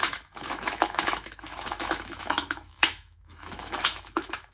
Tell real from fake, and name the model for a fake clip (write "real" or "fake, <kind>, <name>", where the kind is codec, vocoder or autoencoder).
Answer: fake, autoencoder, DAC-VAE